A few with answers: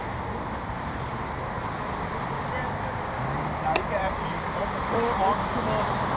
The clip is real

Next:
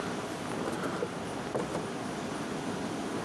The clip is real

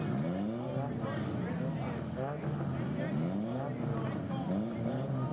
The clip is real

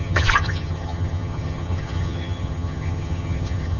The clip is fake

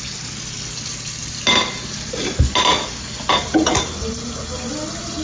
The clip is real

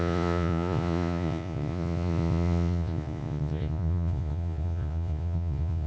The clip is fake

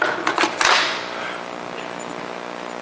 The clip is real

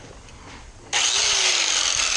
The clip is real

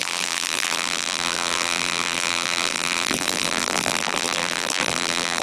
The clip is fake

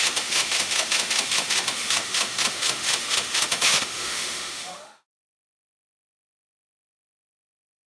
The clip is fake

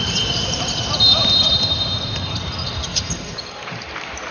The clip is fake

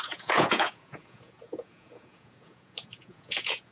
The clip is fake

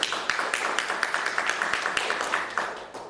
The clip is real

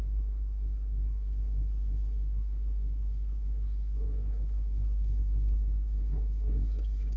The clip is fake